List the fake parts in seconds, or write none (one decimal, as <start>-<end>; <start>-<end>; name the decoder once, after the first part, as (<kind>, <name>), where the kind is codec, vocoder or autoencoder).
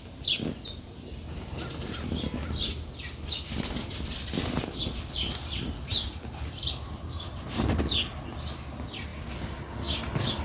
none